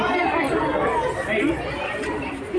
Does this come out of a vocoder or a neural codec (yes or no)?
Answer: yes